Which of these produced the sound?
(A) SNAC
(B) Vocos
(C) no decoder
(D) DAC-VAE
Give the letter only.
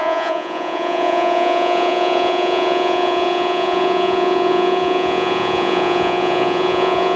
B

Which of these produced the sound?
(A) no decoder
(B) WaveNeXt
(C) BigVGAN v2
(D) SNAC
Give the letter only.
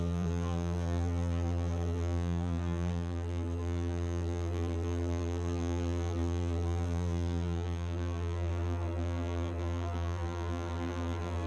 C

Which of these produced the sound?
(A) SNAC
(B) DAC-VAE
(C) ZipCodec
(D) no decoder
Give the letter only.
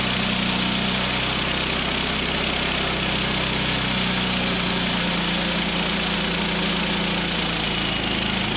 D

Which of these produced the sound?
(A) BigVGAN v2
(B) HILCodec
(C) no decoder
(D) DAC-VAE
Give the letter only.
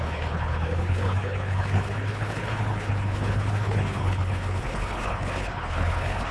B